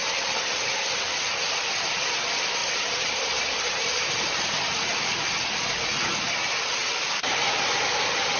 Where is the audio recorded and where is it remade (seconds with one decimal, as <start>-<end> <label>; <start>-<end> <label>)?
0.0-2.6 recorded; 2.6-4.6 remade; 4.6-8.4 recorded